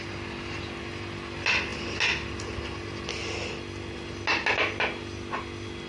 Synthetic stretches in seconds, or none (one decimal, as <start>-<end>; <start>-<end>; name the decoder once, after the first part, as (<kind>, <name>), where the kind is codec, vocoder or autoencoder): none